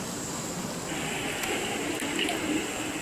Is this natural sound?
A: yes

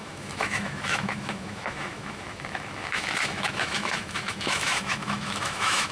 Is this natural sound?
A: no